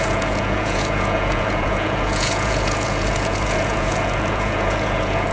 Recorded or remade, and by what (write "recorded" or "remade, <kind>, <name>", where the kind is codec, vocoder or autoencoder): remade, vocoder, Vocos